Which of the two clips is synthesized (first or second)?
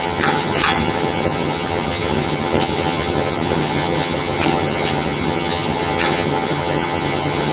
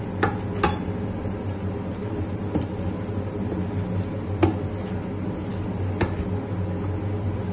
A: first